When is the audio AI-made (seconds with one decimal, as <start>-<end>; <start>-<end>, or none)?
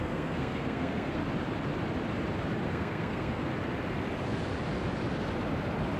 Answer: 0.0-1.2; 2.7-3.5